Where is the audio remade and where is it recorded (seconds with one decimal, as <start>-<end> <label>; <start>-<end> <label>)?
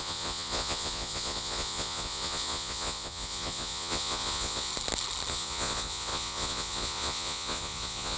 0.0-4.7 remade; 4.7-5.3 recorded; 5.3-8.2 remade